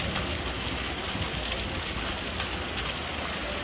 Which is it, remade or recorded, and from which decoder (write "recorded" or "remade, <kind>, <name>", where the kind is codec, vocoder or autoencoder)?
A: recorded